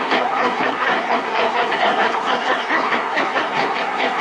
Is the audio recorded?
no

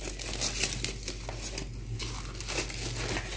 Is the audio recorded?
yes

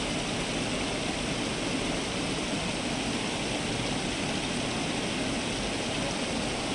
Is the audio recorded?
yes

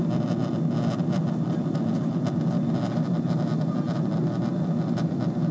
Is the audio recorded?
yes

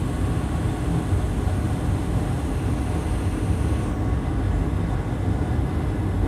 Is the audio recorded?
yes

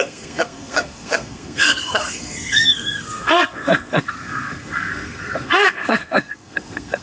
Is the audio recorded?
no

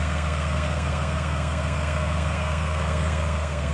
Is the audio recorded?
no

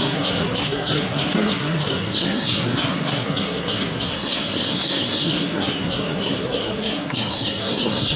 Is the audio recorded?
no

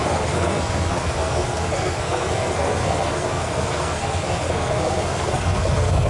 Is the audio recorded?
no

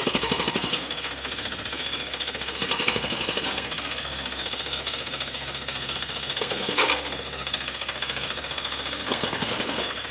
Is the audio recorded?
no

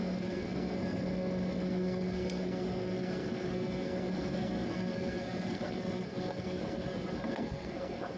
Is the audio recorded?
no